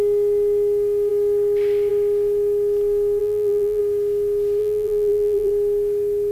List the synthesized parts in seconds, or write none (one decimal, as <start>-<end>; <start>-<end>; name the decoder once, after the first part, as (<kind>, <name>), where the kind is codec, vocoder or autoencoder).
3.2-3.8 (vocoder, BigVGAN v2); 4.6-5.5